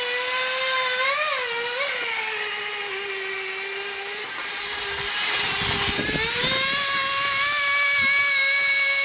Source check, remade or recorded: recorded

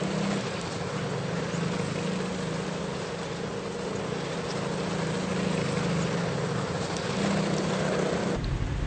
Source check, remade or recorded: recorded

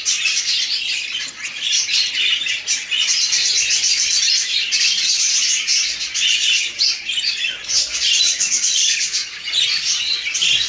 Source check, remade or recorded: recorded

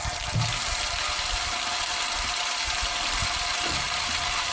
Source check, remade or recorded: recorded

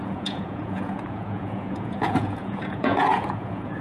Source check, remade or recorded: remade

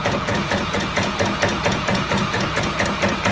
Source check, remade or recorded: remade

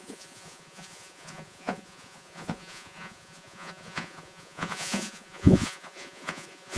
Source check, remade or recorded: remade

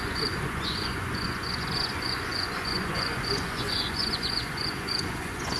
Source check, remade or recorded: remade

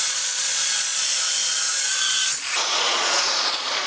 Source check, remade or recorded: remade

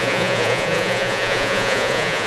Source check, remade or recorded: remade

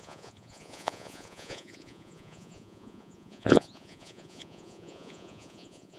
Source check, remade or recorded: remade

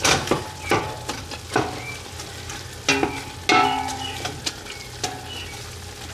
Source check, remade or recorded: recorded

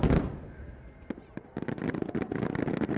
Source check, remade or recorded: recorded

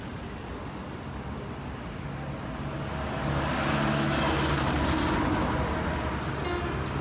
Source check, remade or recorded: recorded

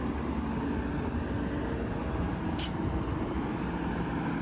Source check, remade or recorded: recorded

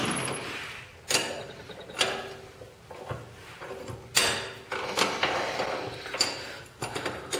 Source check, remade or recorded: recorded